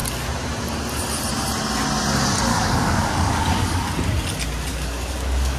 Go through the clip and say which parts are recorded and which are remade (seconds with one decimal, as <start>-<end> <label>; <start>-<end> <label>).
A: 0.0-2.5 recorded; 2.5-3.9 remade; 3.9-4.7 recorded; 4.7-5.6 remade